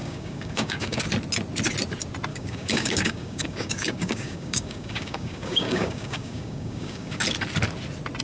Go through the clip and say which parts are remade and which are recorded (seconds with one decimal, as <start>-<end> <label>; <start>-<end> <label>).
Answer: 0.0-1.0 remade; 1.0-2.3 recorded; 2.3-7.2 remade; 7.2-8.2 recorded